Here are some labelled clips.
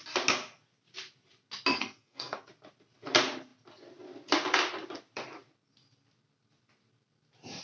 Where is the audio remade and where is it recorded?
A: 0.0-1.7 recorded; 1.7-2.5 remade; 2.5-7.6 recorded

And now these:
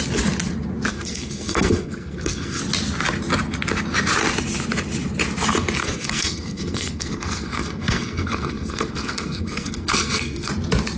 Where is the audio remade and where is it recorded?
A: 0.0-0.9 recorded; 0.9-2.6 remade; 2.6-5.8 recorded; 5.8-10.5 remade; 10.5-11.0 recorded

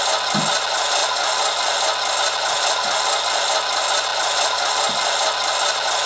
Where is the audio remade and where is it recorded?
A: 0.0-6.1 recorded

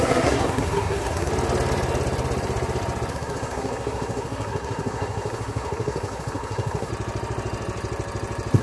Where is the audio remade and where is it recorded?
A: 0.0-1.3 remade; 1.3-3.1 recorded; 3.1-6.9 remade; 6.9-8.6 recorded

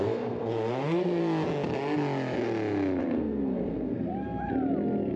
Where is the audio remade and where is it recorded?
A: 0.0-1.2 remade; 1.2-3.0 recorded; 3.0-4.1 remade; 4.1-5.2 recorded

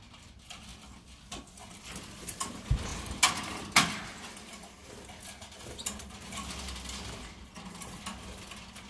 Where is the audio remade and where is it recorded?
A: 0.0-8.9 recorded